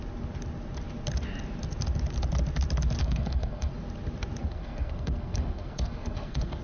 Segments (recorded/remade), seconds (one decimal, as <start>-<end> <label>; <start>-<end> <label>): 0.0-3.0 recorded; 3.0-3.7 remade; 3.7-4.4 recorded; 4.4-6.6 remade